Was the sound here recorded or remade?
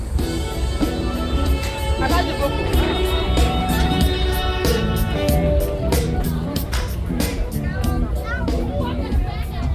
remade